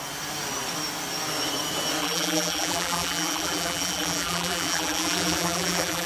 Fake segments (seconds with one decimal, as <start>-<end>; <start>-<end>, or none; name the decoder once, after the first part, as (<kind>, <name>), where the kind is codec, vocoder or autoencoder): 2.0-6.1 (vocoder, BigVGAN v2)